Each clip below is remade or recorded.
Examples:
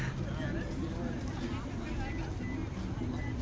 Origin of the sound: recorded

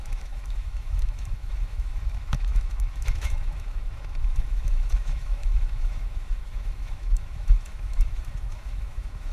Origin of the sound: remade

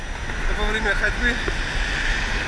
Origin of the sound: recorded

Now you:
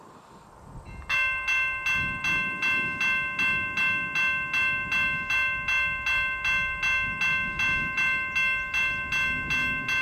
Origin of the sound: recorded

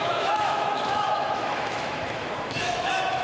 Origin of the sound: remade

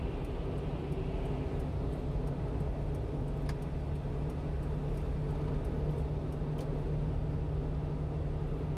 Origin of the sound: recorded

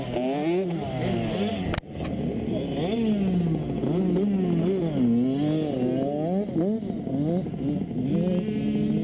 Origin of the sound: recorded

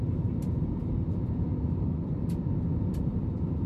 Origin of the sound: recorded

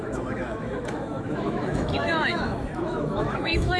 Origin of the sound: remade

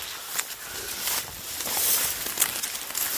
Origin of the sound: recorded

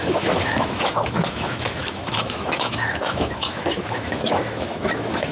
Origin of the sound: remade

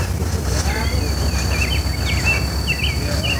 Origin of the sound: recorded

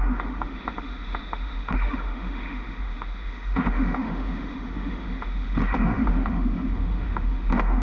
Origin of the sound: remade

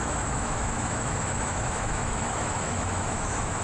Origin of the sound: remade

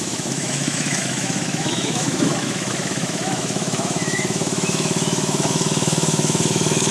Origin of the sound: remade